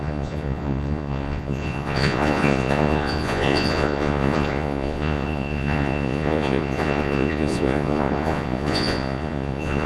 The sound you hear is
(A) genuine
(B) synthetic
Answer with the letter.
B